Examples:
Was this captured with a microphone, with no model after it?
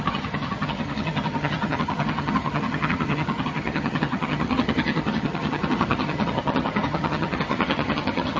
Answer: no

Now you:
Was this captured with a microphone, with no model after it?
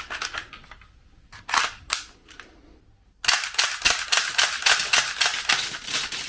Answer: yes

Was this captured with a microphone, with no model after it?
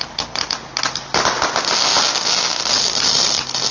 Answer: yes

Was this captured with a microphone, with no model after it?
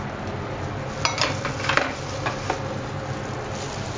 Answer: yes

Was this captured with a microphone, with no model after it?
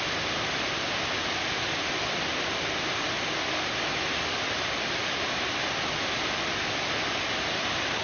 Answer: yes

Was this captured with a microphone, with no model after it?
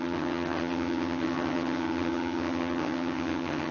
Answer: no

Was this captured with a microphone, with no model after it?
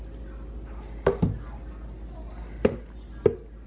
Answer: yes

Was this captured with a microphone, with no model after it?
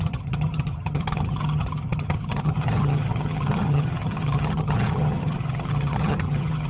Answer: no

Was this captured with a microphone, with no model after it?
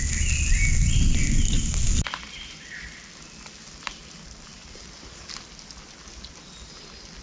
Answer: yes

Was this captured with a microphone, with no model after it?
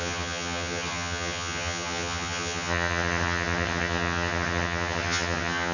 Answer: no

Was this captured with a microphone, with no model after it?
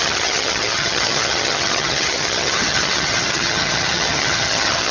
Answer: no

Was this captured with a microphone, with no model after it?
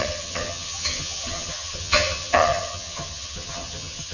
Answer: no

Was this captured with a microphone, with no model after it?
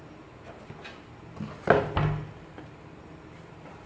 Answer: yes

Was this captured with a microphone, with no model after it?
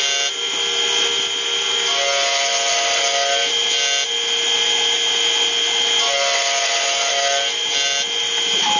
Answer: yes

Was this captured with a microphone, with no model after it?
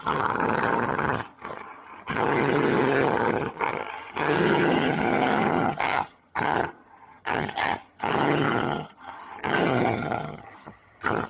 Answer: no